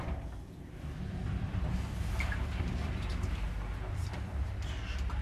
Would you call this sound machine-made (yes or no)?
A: yes